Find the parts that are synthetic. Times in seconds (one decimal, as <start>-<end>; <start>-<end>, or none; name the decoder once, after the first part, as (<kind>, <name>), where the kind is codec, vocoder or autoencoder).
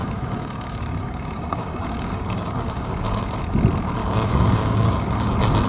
0.0-3.4 (codec, DAC); 4.0-5.3